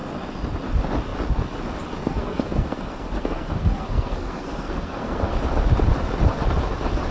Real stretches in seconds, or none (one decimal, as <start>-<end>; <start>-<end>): 0.0-2.0; 5.4-7.1